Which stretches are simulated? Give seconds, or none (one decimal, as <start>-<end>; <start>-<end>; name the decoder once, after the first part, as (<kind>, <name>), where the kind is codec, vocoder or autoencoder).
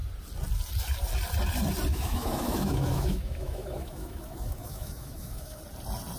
1.9-5.6 (autoencoder, DAC-VAE)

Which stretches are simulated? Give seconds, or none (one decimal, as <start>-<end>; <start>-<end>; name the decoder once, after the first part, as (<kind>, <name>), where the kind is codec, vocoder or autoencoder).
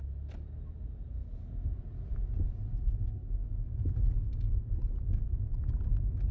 3.4-4.0 (autoencoder, DAC-VAE)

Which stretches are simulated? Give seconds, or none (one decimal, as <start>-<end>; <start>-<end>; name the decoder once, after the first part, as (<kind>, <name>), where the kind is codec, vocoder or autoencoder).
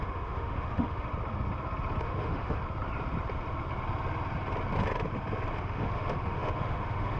0.0-1.1 (autoencoder, DAC-VAE); 2.0-2.6; 5.5-7.2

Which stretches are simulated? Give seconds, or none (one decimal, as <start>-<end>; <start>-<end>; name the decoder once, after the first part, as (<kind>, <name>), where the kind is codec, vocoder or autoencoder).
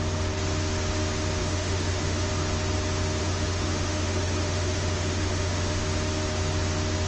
1.4-2.3 (autoencoder, DAC-VAE); 3.2-5.8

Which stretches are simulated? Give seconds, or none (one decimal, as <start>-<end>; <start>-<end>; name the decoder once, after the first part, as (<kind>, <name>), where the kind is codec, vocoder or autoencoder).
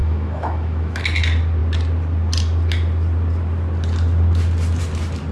0.0-1.0 (autoencoder, DAC-VAE)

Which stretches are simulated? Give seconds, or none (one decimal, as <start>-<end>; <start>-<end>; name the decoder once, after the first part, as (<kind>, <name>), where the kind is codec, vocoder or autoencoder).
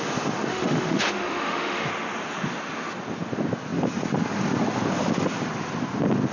0.5-1.9 (autoencoder, DAC-VAE)